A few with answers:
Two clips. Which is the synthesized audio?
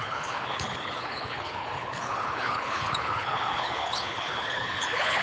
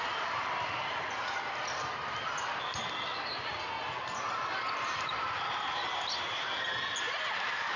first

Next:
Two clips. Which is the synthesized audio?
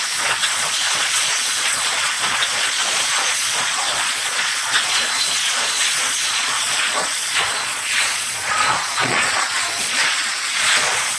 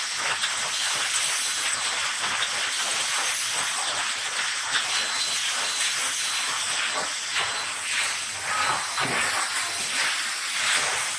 first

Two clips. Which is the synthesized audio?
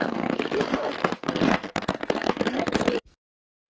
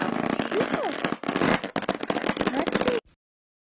first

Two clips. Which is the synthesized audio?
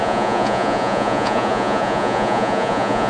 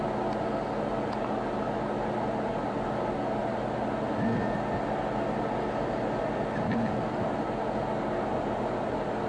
first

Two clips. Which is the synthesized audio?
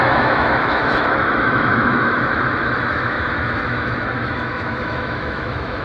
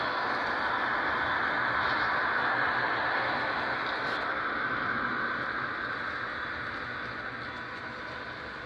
first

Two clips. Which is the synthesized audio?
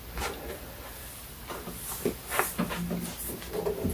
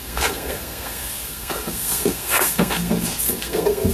second